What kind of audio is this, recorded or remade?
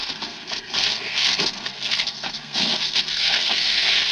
remade